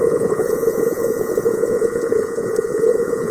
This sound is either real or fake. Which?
fake